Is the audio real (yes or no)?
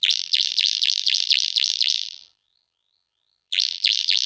no